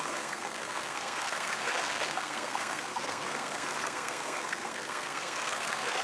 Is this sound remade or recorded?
remade